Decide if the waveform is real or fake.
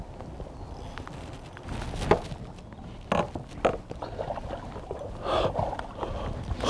real